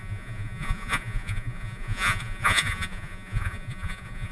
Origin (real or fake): fake